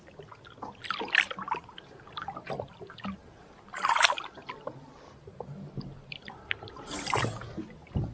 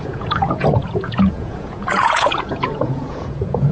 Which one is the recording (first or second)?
first